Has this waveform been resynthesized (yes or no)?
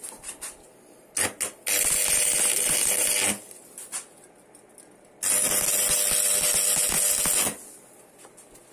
no